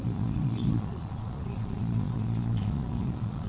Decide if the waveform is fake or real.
fake